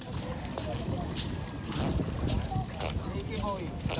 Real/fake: real